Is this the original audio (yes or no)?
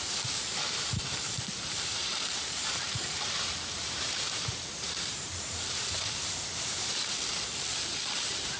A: no